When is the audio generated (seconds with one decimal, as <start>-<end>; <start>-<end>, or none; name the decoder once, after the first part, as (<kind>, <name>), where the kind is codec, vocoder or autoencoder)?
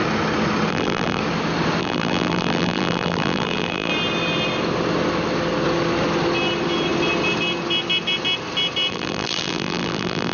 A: 0.7-1.2 (vocoder, BigVGAN v2); 1.8-3.9; 8.9-10.3